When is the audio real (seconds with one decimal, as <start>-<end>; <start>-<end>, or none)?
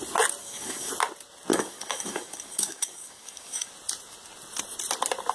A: 0.0-0.4; 0.9-1.5; 3.7-5.3